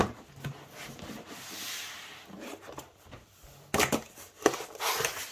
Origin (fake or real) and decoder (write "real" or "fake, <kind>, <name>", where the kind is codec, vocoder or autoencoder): real